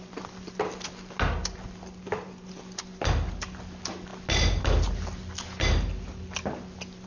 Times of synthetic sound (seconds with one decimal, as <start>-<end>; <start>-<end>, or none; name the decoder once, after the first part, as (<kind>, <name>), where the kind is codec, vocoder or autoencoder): none